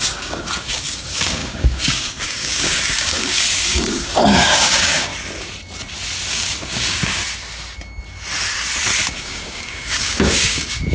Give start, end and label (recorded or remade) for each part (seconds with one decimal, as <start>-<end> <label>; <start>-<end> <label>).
0.0-5.1 remade; 5.1-6.3 recorded; 6.3-7.2 remade; 7.2-9.2 recorded; 9.2-10.9 remade